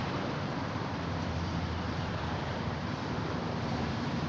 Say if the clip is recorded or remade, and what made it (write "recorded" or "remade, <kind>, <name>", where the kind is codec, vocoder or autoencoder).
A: remade, vocoder, BigVGAN v2